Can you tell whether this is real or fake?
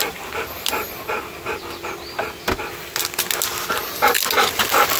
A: real